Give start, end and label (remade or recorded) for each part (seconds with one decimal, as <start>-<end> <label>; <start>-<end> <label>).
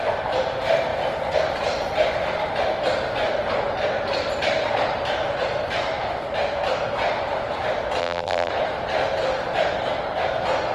0.0-8.0 recorded; 8.0-8.5 remade; 8.5-10.7 recorded